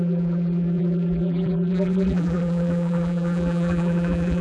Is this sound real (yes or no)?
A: no